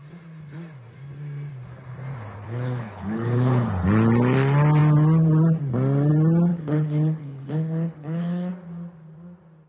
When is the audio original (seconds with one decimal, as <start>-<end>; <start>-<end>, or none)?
0.0-2.4; 3.7-6.5; 8.5-9.7